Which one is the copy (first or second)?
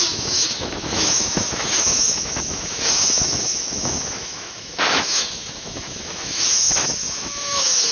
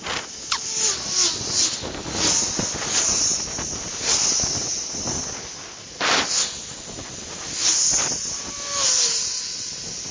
first